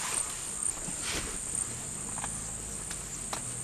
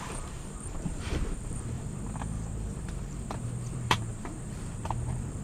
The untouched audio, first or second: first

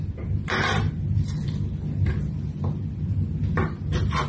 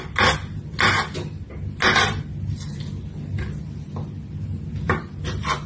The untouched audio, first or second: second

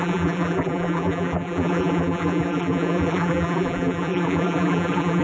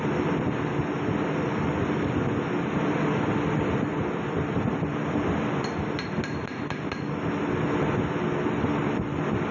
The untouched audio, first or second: second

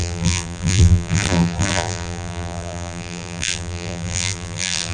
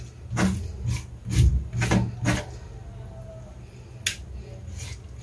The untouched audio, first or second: second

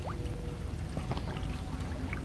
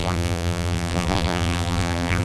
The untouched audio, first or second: first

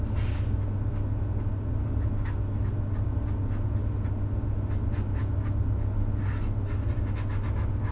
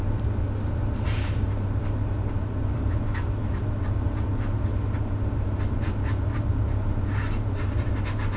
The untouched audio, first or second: first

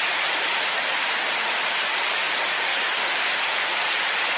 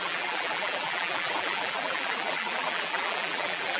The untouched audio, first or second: first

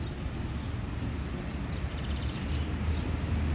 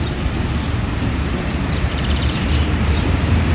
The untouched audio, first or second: first